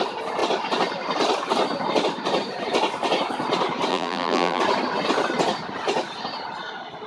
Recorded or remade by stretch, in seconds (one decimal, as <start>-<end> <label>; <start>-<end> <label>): 0.0-3.9 recorded; 3.9-4.6 remade; 4.6-7.1 recorded